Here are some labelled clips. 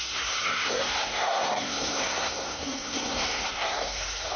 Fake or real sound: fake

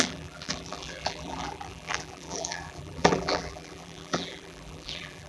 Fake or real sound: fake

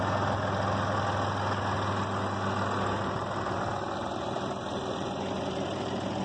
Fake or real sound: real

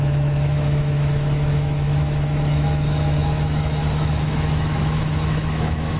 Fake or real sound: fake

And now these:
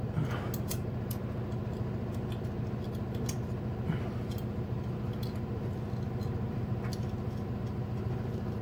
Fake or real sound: real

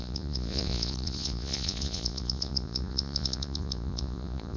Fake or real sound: fake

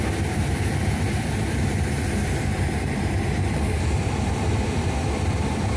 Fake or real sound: fake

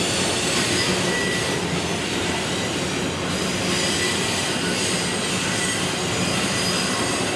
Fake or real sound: real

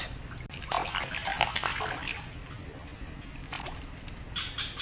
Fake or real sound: real